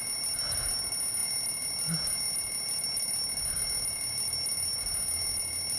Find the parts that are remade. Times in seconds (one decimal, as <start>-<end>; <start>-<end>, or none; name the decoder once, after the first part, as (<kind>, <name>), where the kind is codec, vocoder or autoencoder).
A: none